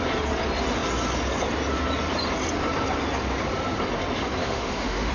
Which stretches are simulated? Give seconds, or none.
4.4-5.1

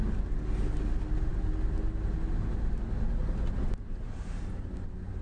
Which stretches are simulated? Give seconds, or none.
none

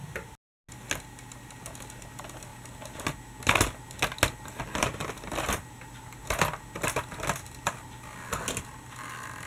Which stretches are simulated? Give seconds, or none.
none

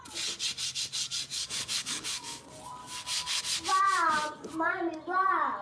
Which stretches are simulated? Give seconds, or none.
1.3-2.4; 2.8-3.4

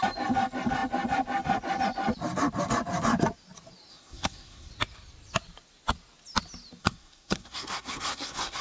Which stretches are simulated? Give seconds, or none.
3.9-4.7; 6.8-8.6

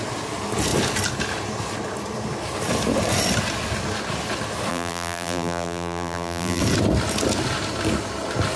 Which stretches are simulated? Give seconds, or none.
4.7-6.6

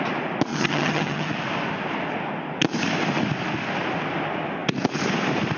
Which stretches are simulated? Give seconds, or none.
0.5-1.3

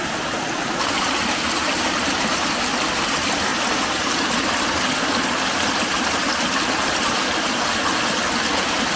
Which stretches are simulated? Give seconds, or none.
none